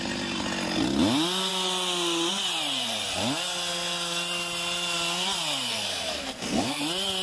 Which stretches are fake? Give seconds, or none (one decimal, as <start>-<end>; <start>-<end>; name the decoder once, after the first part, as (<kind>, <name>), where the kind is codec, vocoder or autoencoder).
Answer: 5.7-6.8 (codec, SNAC)